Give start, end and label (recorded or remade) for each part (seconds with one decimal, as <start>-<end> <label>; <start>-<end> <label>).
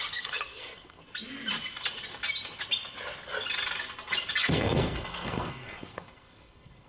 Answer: 0.0-1.0 remade; 1.0-4.4 recorded; 4.4-6.9 remade